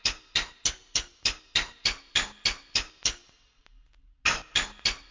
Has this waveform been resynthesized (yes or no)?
no